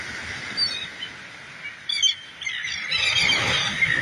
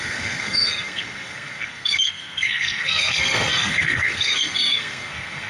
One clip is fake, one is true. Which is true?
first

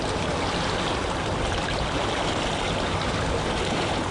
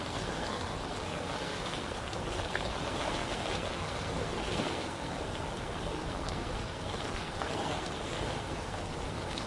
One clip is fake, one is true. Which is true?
first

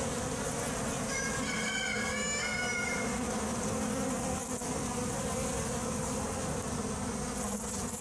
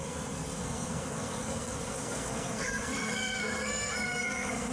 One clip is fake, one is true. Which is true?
first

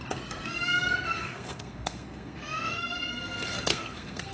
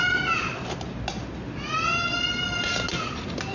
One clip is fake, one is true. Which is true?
second